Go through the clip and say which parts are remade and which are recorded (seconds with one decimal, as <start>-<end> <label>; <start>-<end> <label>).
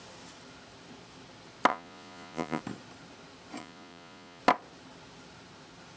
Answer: 0.0-1.7 recorded; 1.7-2.6 remade; 2.6-3.6 recorded; 3.6-4.4 remade; 4.4-6.0 recorded